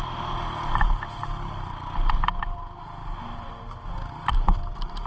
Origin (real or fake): real